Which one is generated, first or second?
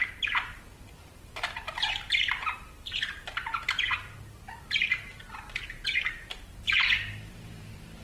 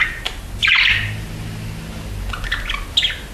first